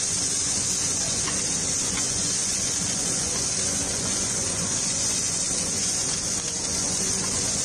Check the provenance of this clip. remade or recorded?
remade